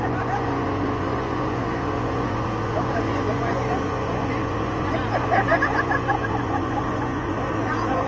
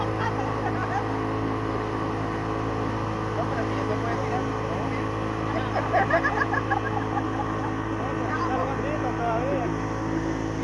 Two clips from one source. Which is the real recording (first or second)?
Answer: second